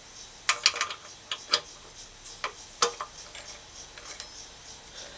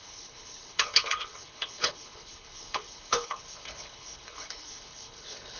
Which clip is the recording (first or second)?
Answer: first